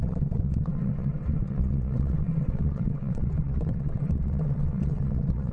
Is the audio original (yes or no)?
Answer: no